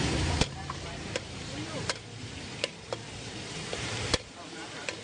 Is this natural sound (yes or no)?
no